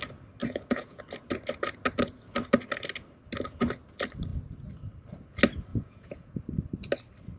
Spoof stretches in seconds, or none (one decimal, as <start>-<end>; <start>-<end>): 0.4-1.0; 5.7-6.4